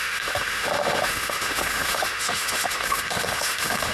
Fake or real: fake